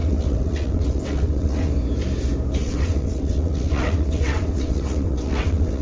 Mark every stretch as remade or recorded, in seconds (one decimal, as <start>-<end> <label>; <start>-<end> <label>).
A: 0.0-1.7 remade; 1.7-2.6 recorded; 2.6-5.8 remade